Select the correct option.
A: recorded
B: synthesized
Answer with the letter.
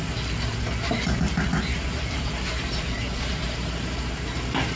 A